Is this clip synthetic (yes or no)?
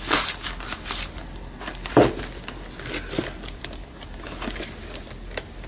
no